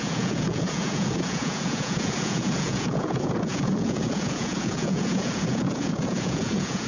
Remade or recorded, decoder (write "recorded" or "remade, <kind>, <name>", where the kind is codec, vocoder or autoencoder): remade, vocoder, Vocos